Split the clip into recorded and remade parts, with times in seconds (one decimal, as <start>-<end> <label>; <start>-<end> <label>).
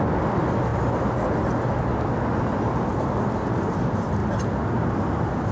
0.0-5.5 recorded